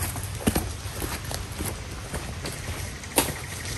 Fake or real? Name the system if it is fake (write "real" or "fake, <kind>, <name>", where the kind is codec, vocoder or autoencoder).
real